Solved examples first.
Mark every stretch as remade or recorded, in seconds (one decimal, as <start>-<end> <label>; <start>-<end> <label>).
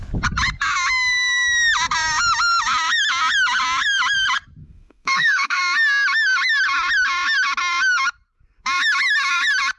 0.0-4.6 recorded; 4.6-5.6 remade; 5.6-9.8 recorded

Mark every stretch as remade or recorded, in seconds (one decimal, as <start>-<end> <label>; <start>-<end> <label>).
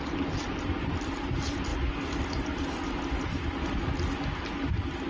0.0-5.1 recorded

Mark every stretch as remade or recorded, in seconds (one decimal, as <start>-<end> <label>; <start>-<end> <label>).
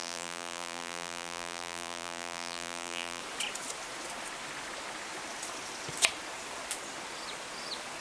0.0-3.2 remade; 3.2-8.0 recorded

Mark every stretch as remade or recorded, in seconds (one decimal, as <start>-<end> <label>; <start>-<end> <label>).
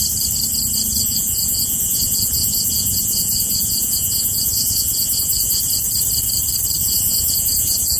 0.0-1.0 recorded; 1.0-5.6 remade; 5.6-6.8 recorded; 6.8-8.0 remade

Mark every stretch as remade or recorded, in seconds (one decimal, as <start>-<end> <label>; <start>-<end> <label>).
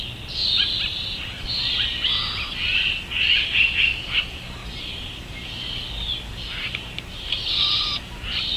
0.0-0.9 recorded; 0.9-1.6 remade; 1.6-8.6 recorded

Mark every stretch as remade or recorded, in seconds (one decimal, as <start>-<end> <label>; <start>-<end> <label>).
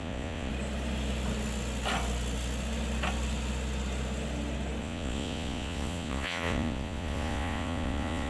0.0-0.5 remade; 0.5-4.8 recorded; 4.8-8.3 remade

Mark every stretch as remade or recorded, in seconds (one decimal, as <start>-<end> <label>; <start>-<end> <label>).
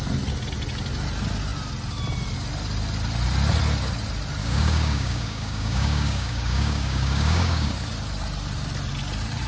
0.0-4.4 recorded; 4.4-7.7 remade; 7.7-9.5 recorded